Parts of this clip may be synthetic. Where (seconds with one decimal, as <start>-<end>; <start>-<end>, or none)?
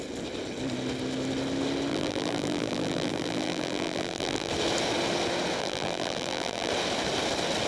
1.9-4.5; 5.6-6.7